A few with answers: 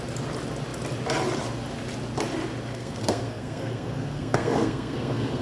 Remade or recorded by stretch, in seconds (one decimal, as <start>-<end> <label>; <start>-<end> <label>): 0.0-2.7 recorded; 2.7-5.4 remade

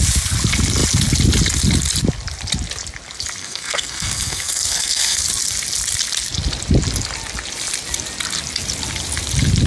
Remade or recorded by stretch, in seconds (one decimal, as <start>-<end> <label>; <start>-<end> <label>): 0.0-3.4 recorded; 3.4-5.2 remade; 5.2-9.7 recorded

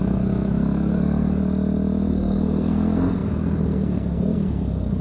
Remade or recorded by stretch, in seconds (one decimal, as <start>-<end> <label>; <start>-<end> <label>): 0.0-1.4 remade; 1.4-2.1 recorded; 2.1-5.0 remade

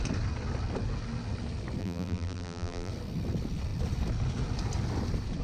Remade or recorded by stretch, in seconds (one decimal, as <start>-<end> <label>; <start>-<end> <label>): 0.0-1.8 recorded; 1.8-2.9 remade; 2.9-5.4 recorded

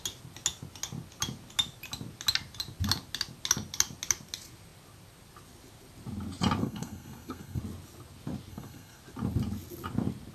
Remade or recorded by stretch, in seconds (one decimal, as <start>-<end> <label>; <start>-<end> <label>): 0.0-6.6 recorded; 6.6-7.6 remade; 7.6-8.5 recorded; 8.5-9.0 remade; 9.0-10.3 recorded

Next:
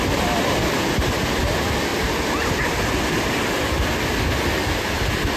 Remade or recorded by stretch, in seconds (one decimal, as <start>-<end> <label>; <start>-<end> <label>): 0.0-5.4 recorded